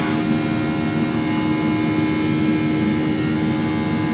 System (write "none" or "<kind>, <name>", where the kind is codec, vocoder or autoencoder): none